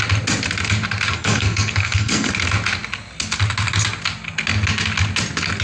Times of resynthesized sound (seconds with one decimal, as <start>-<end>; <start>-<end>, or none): 1.1-2.3